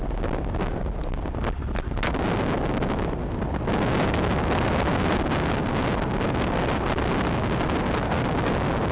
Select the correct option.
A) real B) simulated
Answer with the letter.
A